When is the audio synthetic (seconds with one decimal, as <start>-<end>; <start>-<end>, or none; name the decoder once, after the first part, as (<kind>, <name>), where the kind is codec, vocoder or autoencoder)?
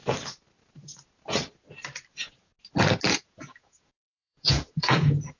2.1-2.5 (vocoder, Vocos); 3.1-5.4